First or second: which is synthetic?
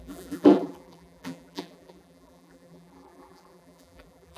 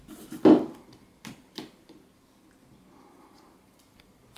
first